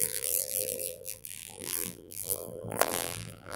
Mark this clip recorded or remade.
remade